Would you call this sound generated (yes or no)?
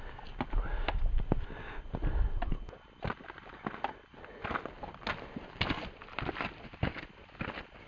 no